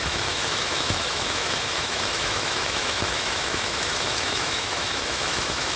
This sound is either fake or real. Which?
fake